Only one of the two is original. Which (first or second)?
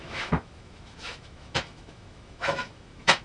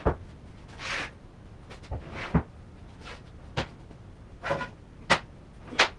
second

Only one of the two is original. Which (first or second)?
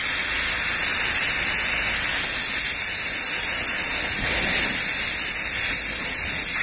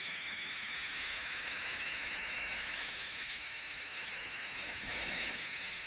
first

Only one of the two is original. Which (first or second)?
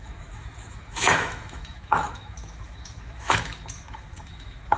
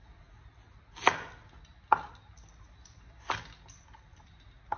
second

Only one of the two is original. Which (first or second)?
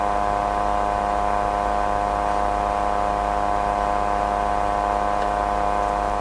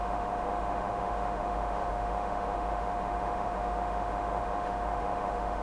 first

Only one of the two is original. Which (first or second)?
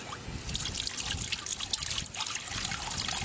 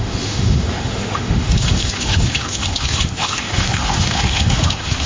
first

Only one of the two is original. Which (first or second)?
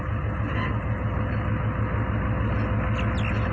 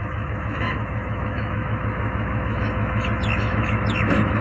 first